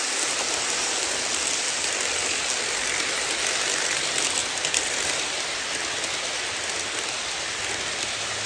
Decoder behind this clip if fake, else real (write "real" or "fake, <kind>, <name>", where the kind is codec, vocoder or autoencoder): real